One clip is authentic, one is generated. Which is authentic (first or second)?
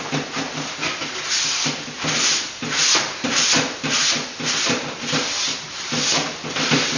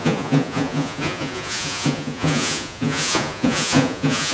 first